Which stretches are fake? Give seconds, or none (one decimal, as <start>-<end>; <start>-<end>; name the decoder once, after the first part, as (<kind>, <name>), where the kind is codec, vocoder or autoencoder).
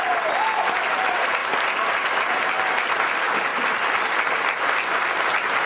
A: none